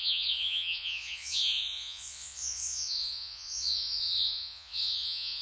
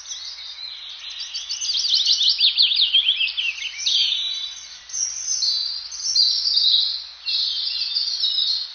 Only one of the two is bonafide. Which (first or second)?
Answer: second